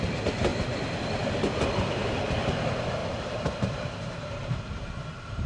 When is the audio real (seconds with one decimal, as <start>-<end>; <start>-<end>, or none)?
0.0-0.5; 1.2-3.0; 4.6-5.5